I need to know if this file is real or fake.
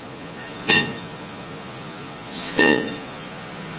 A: fake